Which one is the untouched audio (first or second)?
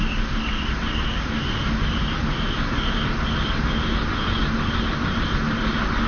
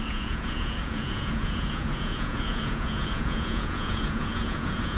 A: first